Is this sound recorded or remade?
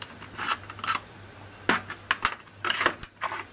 recorded